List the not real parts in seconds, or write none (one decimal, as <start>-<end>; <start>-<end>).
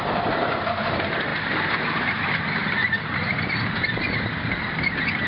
none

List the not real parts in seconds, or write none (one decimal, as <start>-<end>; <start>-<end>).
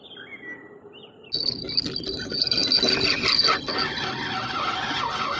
none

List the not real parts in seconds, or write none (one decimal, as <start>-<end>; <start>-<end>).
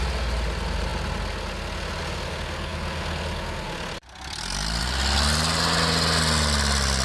none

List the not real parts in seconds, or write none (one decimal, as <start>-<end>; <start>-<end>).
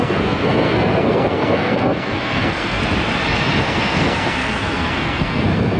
0.0-2.8; 3.6-5.8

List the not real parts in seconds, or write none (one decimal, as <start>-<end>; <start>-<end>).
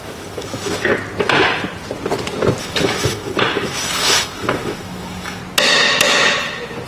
0.0-0.9; 2.6-5.4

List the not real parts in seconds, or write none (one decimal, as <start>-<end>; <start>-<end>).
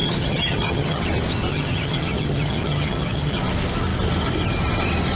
0.0-1.0; 1.5-3.4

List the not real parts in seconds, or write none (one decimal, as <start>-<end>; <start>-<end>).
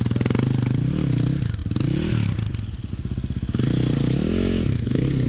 4.7-5.3